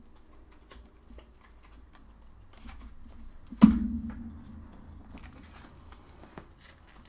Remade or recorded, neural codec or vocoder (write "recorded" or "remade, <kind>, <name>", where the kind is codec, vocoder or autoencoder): recorded